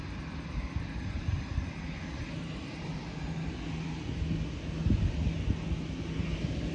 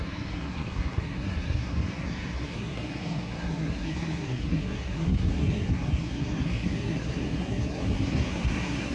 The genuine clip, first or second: first